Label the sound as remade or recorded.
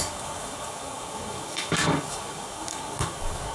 remade